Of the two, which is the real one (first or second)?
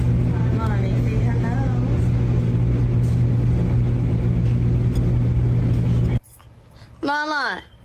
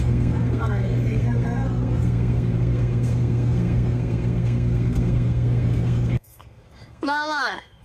first